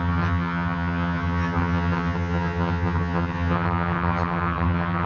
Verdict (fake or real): fake